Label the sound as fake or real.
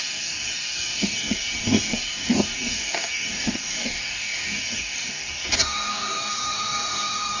fake